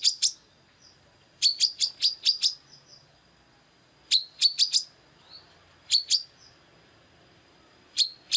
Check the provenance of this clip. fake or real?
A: real